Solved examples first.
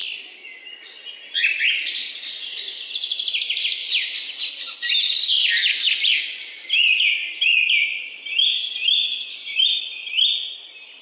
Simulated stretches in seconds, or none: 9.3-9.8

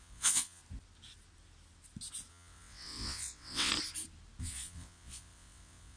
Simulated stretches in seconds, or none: 0.0-0.6; 2.3-3.7; 4.4-6.0